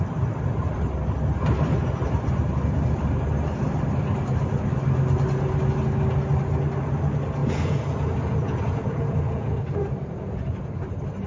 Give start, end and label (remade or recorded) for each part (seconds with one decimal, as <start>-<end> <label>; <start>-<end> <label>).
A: 0.0-7.4 recorded; 7.4-10.7 remade; 10.7-11.3 recorded